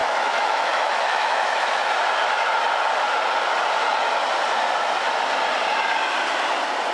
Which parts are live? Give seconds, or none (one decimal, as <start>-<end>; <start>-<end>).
1.9-6.9